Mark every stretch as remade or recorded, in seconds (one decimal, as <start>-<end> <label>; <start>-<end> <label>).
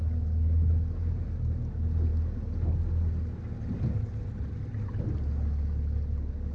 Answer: 0.0-6.5 recorded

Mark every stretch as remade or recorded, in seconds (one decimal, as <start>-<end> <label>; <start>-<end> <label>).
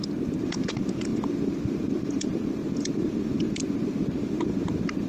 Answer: 0.0-5.1 remade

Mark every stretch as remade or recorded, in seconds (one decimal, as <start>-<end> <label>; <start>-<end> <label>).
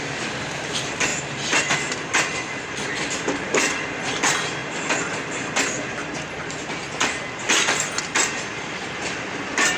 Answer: 0.0-4.6 remade; 4.6-8.0 recorded; 8.0-9.8 remade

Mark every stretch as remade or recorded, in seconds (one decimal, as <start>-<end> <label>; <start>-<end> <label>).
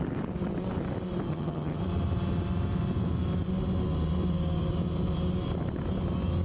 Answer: 0.0-1.3 recorded; 1.3-1.8 remade; 1.8-6.4 recorded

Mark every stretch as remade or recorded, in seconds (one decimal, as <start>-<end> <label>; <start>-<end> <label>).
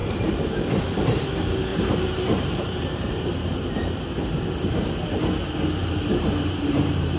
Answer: 0.0-0.8 remade; 0.8-1.7 recorded; 1.7-3.8 remade; 3.8-5.8 recorded; 5.8-7.2 remade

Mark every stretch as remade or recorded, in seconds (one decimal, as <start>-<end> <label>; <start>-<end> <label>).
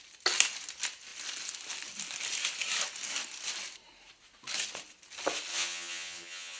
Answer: 0.0-5.5 recorded; 5.5-6.6 remade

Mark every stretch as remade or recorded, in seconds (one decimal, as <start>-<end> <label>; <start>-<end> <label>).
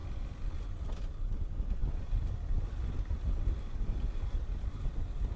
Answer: 0.0-5.4 recorded